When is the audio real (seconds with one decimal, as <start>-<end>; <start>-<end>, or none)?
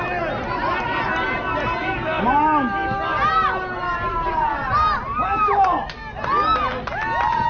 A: 0.0-7.5